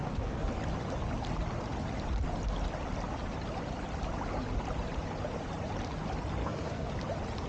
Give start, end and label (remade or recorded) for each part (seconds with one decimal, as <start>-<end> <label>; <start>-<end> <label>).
0.0-0.5 remade; 0.5-6.4 recorded; 6.4-6.9 remade; 6.9-7.5 recorded